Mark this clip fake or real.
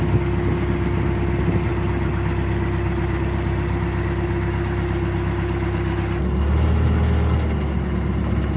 real